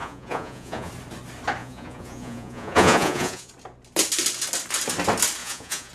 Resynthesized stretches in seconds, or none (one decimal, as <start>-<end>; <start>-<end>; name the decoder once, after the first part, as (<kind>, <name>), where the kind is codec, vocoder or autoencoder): 0.0-0.9 (vocoder, Vocos); 1.6-3.5; 5.4-5.9